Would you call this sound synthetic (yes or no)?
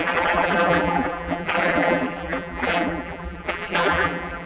yes